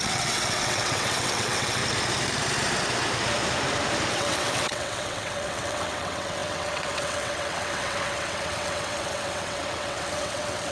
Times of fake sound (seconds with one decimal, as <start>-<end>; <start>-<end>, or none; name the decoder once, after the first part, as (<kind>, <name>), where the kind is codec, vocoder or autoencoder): 0.0-1.8 (vocoder, WaveNeXt); 4.1-10.7